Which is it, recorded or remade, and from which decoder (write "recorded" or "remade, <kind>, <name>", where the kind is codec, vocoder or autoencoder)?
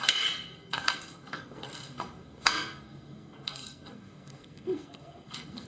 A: remade, codec, SNAC